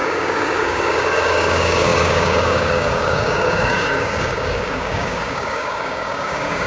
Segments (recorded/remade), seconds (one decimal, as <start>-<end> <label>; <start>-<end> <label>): 0.0-6.7 remade